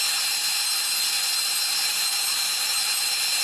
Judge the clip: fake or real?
real